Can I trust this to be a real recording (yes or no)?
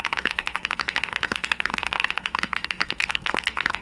no